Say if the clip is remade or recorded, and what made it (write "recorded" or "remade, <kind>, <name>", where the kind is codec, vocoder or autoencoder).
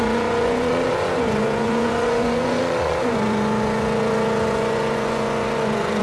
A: remade, vocoder, Vocos